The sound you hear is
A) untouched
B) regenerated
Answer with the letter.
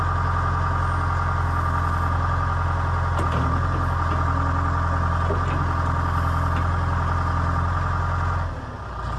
A